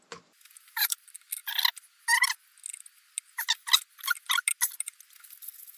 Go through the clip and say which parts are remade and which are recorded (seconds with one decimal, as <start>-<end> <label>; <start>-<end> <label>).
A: 0.0-5.8 recorded